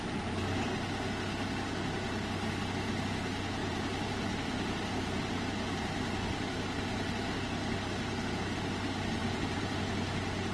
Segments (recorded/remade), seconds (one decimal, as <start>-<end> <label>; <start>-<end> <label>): 0.0-3.6 recorded; 3.6-5.3 remade; 5.3-9.2 recorded; 9.2-9.8 remade; 9.8-10.5 recorded